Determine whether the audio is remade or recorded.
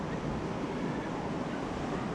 recorded